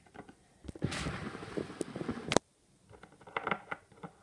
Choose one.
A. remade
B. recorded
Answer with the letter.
B